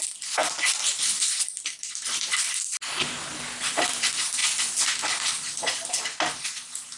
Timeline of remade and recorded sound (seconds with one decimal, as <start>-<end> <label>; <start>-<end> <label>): 0.0-7.0 recorded